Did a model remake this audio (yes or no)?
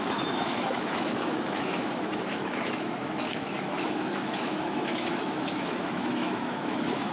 yes